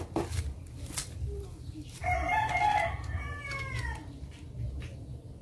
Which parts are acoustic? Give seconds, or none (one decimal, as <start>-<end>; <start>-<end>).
0.0-5.4